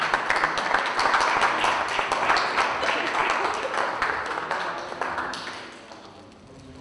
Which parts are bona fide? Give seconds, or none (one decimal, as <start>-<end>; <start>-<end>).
0.0-6.8